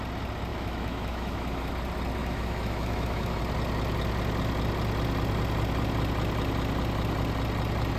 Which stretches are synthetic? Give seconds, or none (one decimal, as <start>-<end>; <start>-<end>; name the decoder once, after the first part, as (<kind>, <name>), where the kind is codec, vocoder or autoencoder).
0.5-1.7 (autoencoder, DAC-VAE); 2.2-3.4